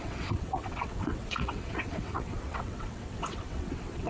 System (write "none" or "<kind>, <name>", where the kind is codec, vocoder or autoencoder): vocoder, WaveNeXt